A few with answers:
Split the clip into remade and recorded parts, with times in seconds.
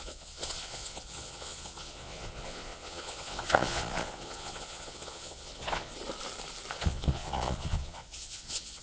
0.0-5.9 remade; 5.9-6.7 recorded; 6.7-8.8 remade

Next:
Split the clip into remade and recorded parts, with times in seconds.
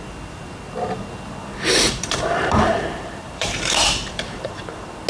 0.0-1.4 recorded; 1.4-4.5 remade; 4.5-5.1 recorded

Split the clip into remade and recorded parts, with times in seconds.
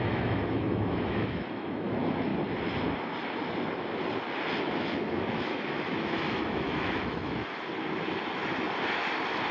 0.0-2.3 remade; 2.3-4.6 recorded; 4.6-7.4 remade; 7.4-9.5 recorded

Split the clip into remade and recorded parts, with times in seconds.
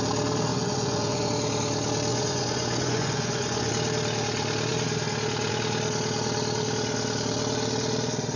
0.0-0.5 recorded; 0.5-1.3 remade; 1.3-2.1 recorded; 2.1-3.7 remade; 3.7-8.4 recorded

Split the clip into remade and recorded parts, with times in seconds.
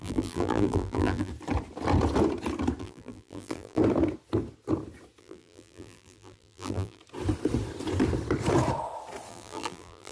0.0-1.3 remade; 1.3-2.8 recorded; 2.8-3.8 remade; 3.8-5.2 recorded; 5.2-7.0 remade; 7.0-9.3 recorded; 9.3-10.1 remade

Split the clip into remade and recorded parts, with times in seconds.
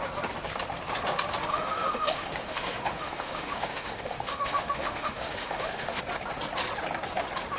0.0-1.5 recorded; 1.5-6.0 remade; 6.0-7.6 recorded